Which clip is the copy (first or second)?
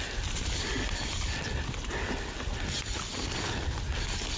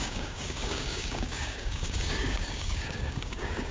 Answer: second